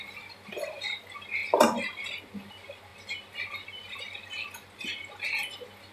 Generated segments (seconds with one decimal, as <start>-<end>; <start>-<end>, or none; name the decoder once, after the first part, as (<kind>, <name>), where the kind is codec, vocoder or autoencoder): none

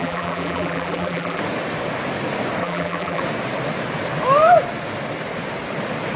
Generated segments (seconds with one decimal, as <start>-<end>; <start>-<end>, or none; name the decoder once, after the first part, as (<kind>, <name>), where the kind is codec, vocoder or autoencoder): 0.0-1.4 (vocoder, BigVGAN v2); 2.6-3.2